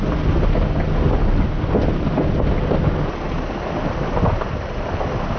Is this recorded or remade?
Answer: recorded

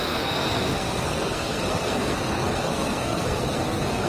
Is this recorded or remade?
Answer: remade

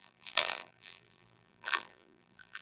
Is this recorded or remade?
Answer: remade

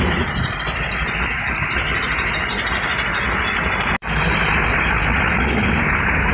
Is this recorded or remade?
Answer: recorded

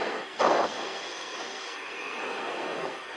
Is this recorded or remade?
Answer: remade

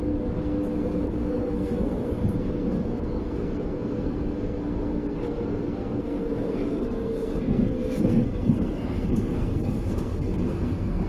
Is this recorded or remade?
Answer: remade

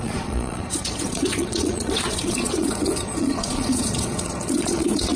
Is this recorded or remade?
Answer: remade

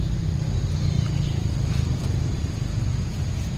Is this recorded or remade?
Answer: recorded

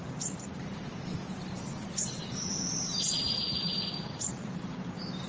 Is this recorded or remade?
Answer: remade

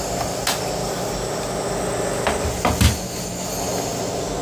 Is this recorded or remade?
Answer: recorded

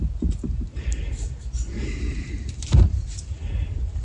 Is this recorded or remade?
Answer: remade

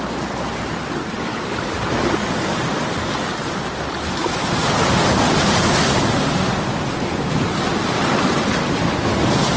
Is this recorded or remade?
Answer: recorded